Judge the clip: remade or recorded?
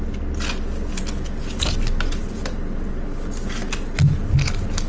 recorded